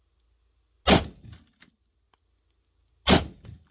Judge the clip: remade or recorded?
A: recorded